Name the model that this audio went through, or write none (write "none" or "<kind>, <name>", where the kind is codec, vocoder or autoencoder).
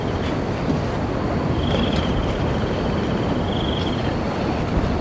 none